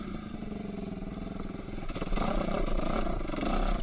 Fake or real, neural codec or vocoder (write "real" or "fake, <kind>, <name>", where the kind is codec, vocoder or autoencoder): fake, vocoder, BigVGAN v2